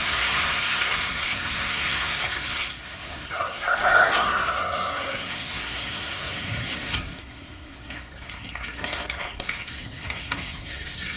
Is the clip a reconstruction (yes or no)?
yes